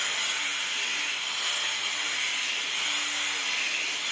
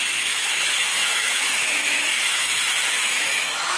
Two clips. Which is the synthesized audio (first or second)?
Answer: second